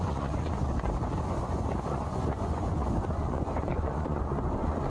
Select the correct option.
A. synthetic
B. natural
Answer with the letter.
A